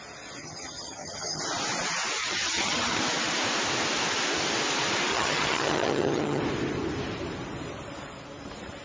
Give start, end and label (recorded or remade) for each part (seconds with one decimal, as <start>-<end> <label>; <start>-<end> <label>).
0.0-0.4 recorded; 0.4-1.4 remade; 1.4-2.2 recorded; 2.2-3.0 remade; 3.0-5.1 recorded; 5.1-6.4 remade; 6.4-8.8 recorded